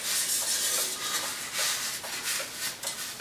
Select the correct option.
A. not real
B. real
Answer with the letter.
B